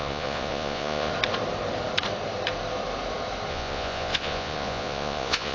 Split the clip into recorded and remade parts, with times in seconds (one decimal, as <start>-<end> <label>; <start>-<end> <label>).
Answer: 0.0-1.1 remade; 1.1-3.5 recorded; 3.5-5.5 remade